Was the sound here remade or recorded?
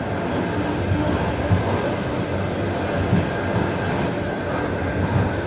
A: recorded